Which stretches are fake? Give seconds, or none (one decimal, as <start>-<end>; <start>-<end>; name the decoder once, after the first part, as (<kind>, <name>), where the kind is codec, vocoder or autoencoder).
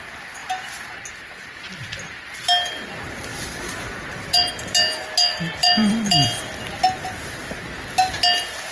3.3-4.5 (vocoder, BigVGAN v2); 5.6-6.5